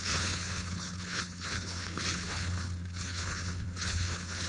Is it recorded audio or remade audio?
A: remade